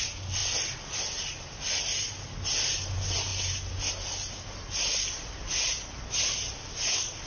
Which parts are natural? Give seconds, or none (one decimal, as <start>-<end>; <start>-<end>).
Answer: 0.0-7.3